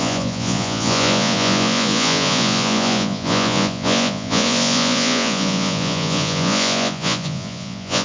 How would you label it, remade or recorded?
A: remade